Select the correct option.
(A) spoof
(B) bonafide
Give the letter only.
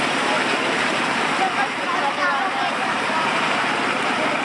A